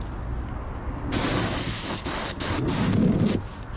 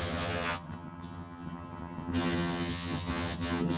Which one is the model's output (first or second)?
second